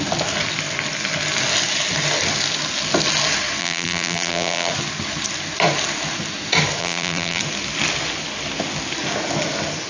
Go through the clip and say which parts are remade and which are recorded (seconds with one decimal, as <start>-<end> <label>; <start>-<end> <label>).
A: 0.0-3.6 recorded; 3.6-4.7 remade; 4.7-6.8 recorded; 6.8-7.4 remade; 7.4-9.9 recorded